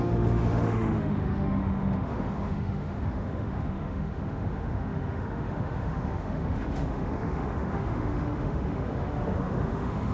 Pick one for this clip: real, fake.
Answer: fake